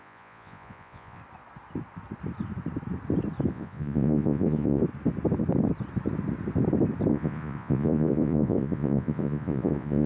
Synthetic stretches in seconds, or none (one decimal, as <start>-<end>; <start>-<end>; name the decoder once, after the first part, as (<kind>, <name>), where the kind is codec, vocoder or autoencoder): 0.0-1.2 (vocoder, Vocos); 3.5-4.8; 7.1-10.1